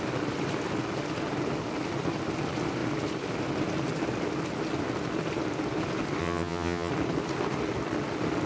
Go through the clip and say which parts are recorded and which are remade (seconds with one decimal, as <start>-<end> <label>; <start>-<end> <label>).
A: 0.0-6.2 recorded; 6.2-6.9 remade; 6.9-8.5 recorded